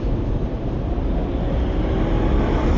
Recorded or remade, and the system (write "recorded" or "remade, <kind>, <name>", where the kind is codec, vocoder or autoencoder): recorded